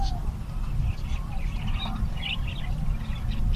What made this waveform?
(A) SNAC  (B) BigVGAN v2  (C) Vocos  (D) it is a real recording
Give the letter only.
D